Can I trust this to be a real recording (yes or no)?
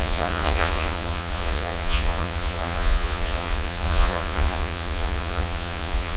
no